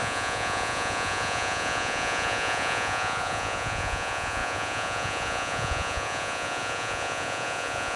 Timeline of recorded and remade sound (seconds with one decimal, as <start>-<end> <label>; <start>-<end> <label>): 0.0-8.0 remade